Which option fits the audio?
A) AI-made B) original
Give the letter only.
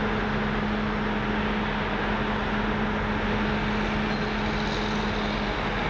B